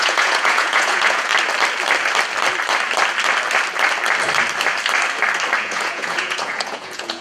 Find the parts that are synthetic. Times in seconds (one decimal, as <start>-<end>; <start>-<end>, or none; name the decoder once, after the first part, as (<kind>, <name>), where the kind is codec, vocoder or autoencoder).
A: 0.0-1.3 (vocoder, Vocos); 5.6-7.2